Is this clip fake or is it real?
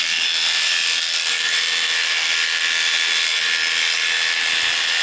real